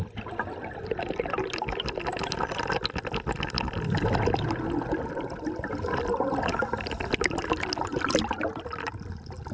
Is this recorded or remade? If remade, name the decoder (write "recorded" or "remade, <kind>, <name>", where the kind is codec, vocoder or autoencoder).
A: recorded